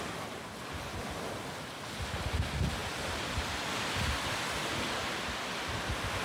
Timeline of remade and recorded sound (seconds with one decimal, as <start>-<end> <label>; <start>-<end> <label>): 0.0-6.2 recorded